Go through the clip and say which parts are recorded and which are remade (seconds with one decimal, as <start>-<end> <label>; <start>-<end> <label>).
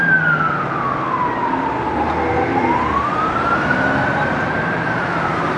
0.0-1.3 remade; 1.3-2.5 recorded; 2.5-5.6 remade